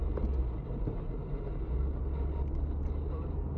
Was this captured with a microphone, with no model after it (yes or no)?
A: yes